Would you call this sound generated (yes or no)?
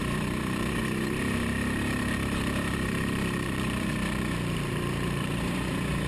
yes